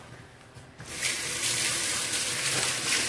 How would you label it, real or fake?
real